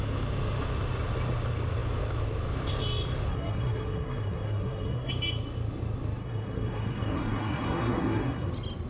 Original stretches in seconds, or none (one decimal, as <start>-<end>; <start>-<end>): 0.0-3.3; 5.1-6.2; 8.5-8.9